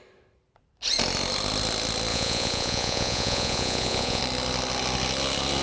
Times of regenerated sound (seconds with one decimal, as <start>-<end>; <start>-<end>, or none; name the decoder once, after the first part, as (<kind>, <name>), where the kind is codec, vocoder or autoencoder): 2.1-4.2 (vocoder, Vocos)